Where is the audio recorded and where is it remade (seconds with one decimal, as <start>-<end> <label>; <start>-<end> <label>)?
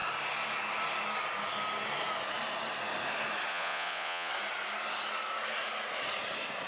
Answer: 0.0-3.5 recorded; 3.5-4.3 remade; 4.3-6.7 recorded